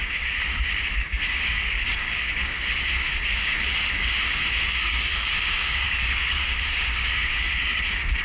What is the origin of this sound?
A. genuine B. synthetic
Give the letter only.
B